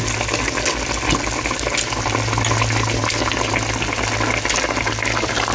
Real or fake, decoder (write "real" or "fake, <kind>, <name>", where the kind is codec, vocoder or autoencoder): real